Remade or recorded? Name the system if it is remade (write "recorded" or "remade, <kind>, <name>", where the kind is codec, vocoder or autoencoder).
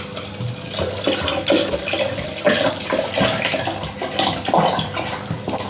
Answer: recorded